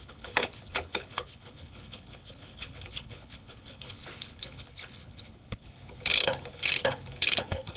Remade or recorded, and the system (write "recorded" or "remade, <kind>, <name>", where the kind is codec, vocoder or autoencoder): remade, codec, HILCodec